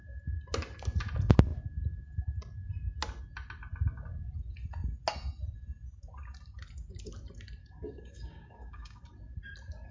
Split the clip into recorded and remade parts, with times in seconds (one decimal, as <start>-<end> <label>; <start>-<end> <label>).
0.0-7.6 recorded; 7.6-9.1 remade; 9.1-9.9 recorded